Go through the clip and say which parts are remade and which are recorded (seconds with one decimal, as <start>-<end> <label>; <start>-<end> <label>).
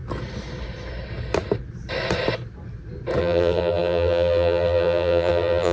0.0-3.2 recorded; 3.2-5.7 remade